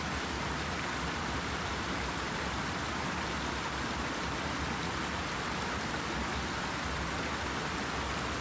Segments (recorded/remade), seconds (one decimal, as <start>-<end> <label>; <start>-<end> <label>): 0.0-1.7 recorded; 1.7-2.6 remade; 2.6-8.4 recorded